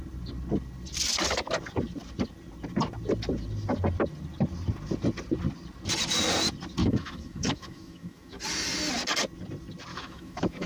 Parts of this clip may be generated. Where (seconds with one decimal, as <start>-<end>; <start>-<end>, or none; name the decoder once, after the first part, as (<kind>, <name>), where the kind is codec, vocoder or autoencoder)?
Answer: 6.8-8.4 (autoencoder, DAC-VAE); 9.9-10.7